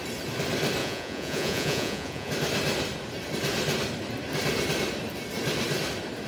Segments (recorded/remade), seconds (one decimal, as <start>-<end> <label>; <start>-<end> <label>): 0.0-0.8 recorded; 0.8-2.3 remade; 2.3-6.3 recorded